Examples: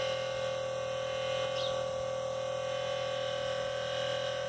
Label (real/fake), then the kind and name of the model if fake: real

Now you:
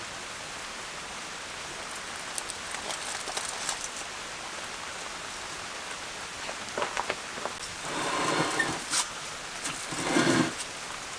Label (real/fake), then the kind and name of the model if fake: real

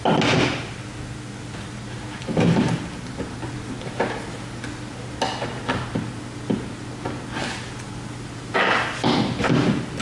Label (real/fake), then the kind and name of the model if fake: real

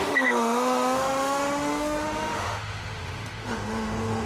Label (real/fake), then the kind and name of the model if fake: fake, autoencoder, DAC-VAE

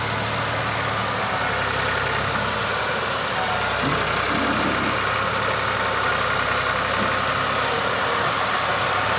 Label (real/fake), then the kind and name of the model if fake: real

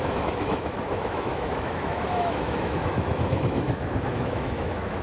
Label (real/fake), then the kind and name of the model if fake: fake, autoencoder, DAC-VAE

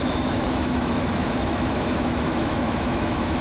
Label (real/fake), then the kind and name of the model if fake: fake, autoencoder, DAC-VAE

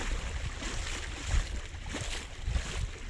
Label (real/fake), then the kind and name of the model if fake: real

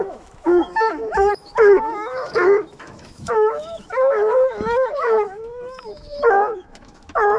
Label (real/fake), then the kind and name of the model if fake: fake, autoencoder, DAC-VAE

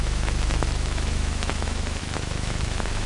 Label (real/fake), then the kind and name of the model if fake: fake, autoencoder, DAC-VAE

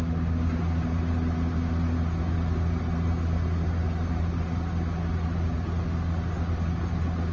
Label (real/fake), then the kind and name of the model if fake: real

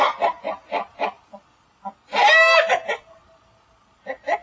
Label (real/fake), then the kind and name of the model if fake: real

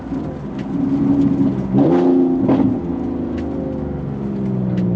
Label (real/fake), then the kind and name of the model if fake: real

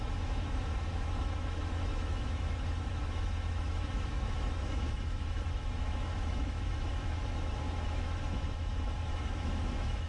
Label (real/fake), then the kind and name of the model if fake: fake, autoencoder, DAC-VAE